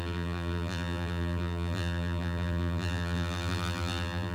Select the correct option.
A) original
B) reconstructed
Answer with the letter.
B